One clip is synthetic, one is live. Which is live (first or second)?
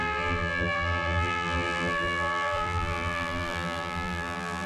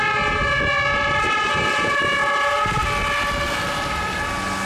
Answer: second